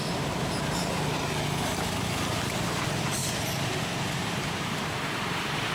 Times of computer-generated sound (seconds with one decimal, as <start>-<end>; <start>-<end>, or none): 4.2-5.0